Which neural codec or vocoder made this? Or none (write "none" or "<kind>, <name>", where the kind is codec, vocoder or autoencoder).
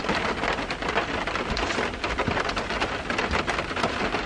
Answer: none